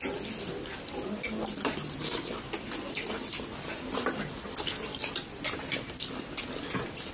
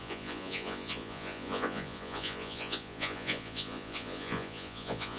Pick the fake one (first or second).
second